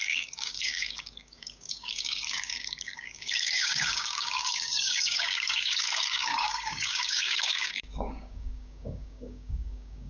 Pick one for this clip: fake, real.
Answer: fake